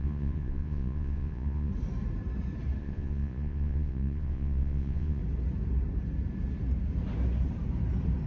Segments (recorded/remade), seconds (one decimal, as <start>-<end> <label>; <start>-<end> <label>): 0.0-1.7 remade; 1.7-2.8 recorded; 2.8-5.2 remade; 5.2-8.3 recorded